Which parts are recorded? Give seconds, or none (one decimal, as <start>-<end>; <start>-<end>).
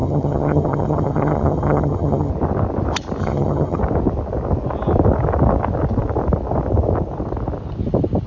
2.3-3.2; 3.8-8.3